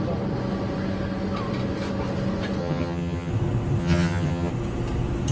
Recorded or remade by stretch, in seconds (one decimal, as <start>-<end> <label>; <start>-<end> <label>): 0.0-2.6 recorded; 2.6-3.3 remade; 3.3-3.8 recorded; 3.8-4.5 remade; 4.5-5.3 recorded